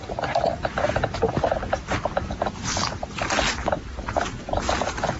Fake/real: real